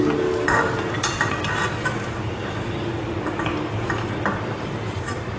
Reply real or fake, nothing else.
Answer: real